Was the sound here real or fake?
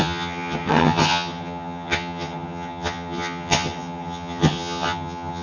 fake